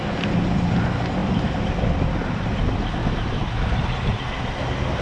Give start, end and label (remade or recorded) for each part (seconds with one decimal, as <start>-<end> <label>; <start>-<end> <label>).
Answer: 0.0-3.0 recorded; 3.0-4.4 remade; 4.4-5.0 recorded